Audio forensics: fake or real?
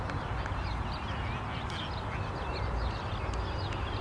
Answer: real